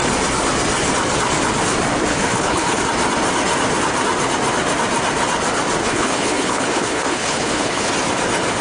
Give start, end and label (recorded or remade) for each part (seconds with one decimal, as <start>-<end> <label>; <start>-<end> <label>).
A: 0.0-2.1 recorded; 2.1-2.8 remade; 2.8-5.8 recorded; 5.8-7.9 remade; 7.9-8.6 recorded